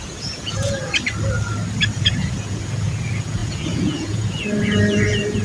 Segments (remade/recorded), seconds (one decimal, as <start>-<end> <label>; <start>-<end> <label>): 0.0-0.8 remade; 0.8-2.0 recorded; 2.0-5.4 remade